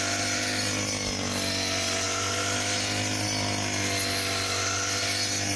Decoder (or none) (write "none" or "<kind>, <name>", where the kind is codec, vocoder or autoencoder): none